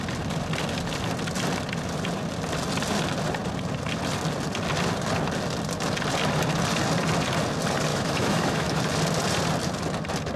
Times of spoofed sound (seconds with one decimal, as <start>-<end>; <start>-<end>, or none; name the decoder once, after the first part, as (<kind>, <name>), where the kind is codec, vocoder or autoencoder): 7.9-8.8 (autoencoder, DAC-VAE)